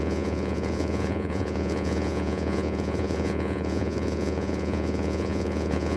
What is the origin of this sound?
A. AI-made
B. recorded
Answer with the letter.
A